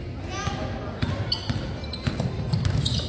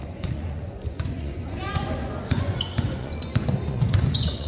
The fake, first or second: second